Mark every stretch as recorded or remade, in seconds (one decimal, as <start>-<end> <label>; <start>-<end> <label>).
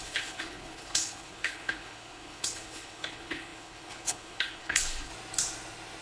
0.0-5.1 remade; 5.1-6.0 recorded